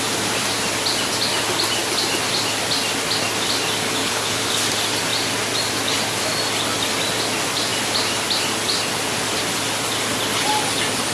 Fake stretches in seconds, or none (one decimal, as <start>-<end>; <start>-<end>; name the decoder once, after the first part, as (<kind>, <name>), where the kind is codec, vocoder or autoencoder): 4.0-4.5 (codec, HILCodec)